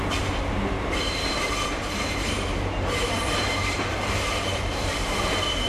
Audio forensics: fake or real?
fake